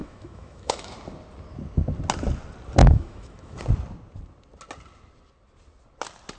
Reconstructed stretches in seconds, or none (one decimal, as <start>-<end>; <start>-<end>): 0.0-0.9; 2.8-3.6